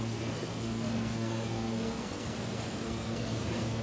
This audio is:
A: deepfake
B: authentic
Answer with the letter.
A